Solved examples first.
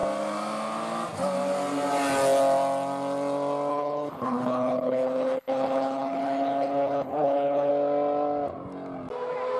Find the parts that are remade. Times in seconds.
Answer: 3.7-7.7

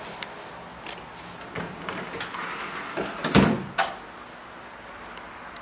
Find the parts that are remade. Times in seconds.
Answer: none

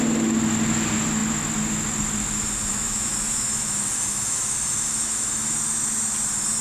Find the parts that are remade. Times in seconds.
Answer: 2.7-5.6

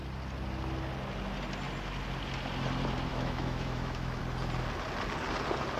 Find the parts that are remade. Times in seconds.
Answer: 3.1-4.2

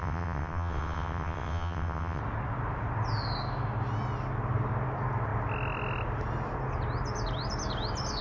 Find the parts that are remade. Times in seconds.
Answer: 0.0-2.2

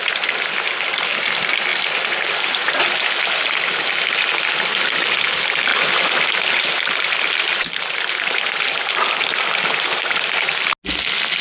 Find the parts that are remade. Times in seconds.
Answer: none